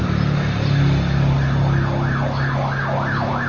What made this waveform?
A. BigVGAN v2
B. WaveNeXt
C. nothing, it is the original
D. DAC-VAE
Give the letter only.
C